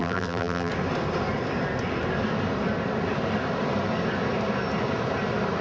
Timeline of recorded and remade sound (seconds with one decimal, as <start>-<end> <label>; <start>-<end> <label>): 0.0-0.7 remade; 0.7-5.6 recorded